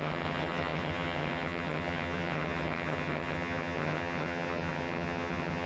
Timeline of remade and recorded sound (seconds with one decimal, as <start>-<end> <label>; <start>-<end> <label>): 0.0-5.7 remade